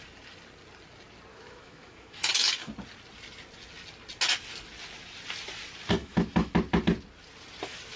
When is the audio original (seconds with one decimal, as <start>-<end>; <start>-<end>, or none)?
0.0-1.3; 2.5-6.0; 6.5-8.0